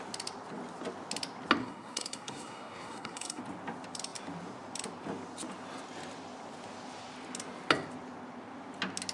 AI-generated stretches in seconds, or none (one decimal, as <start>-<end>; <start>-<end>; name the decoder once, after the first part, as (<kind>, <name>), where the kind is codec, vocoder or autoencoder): 1.6-3.4 (codec, SNAC)